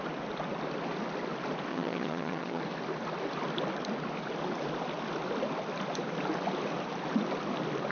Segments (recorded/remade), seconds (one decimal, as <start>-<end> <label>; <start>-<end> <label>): 0.0-1.7 recorded; 1.7-2.6 remade; 2.6-7.9 recorded